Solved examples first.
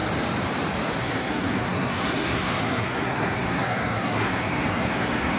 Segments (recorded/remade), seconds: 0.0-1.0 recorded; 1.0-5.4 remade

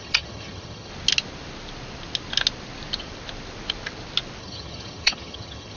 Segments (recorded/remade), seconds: 0.0-0.9 remade; 0.9-4.4 recorded; 4.4-5.8 remade

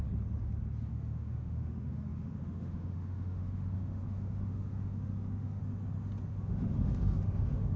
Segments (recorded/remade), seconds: 0.0-0.9 recorded; 0.9-5.6 remade; 5.6-6.3 recorded; 6.3-7.8 remade

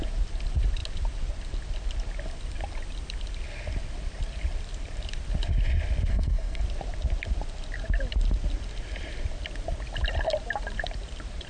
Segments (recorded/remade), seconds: 0.0-6.1 recorded; 6.1-6.6 remade; 6.6-11.5 recorded

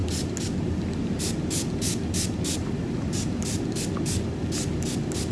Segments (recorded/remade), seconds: 0.0-5.3 recorded